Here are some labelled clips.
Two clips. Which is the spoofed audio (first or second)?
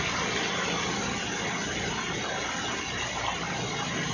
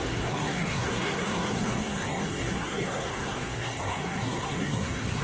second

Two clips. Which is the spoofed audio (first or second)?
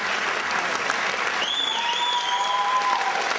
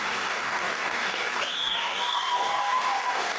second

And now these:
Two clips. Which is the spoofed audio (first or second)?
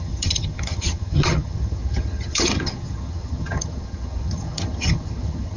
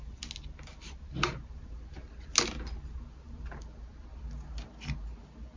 first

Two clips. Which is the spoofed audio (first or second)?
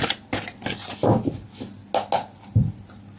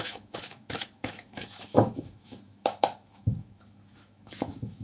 second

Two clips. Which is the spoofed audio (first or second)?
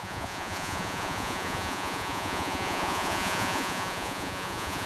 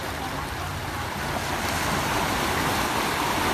first